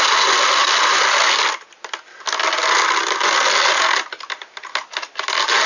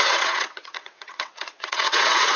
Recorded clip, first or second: first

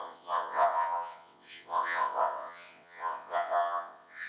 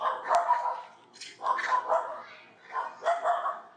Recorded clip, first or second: second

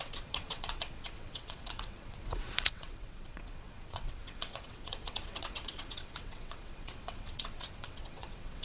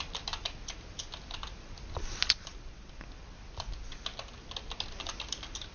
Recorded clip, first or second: second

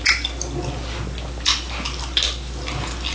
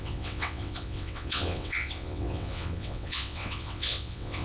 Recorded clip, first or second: first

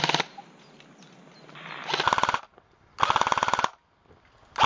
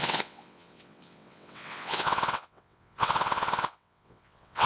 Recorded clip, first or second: first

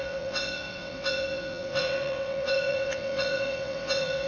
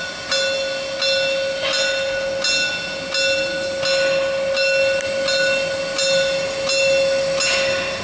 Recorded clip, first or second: second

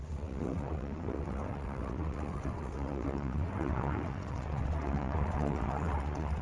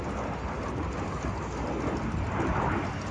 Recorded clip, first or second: second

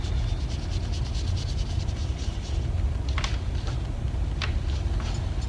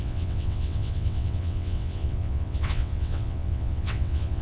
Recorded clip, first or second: first